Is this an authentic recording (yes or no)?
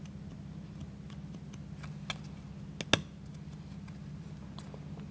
yes